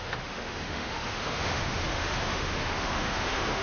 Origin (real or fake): fake